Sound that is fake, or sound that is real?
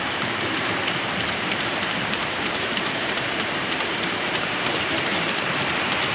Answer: fake